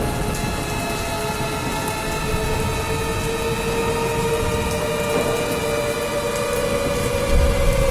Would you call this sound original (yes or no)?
yes